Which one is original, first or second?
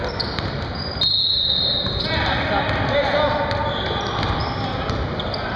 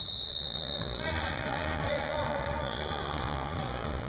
first